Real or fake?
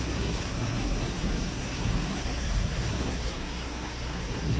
fake